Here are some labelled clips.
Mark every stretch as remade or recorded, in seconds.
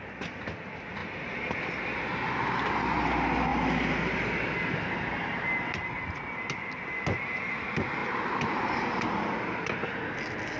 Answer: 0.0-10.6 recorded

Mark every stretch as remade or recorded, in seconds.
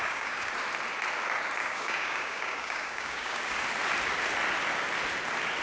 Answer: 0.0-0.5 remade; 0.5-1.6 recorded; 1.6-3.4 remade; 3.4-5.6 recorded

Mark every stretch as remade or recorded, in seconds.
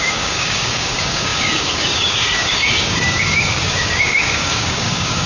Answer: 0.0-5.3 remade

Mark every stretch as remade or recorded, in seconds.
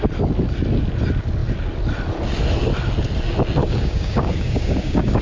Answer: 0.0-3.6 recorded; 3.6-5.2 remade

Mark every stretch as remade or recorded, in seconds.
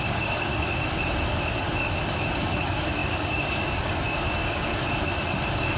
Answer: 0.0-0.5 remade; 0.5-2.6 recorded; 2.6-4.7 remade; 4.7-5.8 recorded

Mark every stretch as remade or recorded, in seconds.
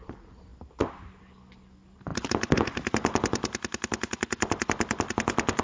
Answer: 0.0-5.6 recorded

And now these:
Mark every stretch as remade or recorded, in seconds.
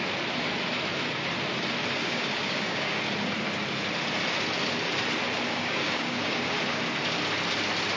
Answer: 0.0-2.0 recorded; 2.0-3.0 remade; 3.0-5.5 recorded; 5.5-6.5 remade; 6.5-8.0 recorded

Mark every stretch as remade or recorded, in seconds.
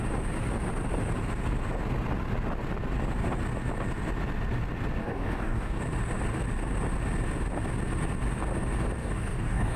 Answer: 0.0-5.0 recorded; 5.0-5.8 remade; 5.8-9.0 recorded; 9.0-9.8 remade